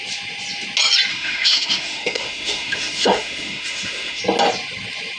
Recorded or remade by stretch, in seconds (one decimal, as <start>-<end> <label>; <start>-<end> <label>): 0.0-1.1 recorded; 1.1-4.2 remade; 4.2-5.2 recorded